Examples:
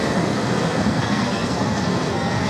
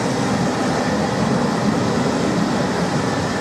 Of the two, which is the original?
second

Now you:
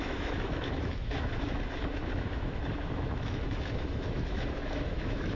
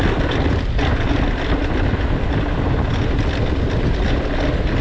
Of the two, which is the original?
second